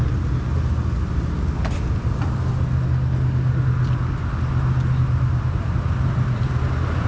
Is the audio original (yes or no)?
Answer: yes